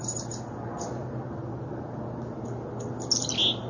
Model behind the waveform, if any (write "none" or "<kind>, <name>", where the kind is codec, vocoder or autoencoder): none